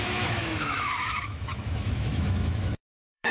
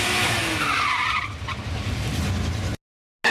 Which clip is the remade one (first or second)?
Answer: first